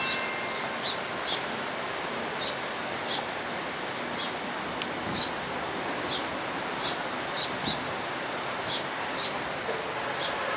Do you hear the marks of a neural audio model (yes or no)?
no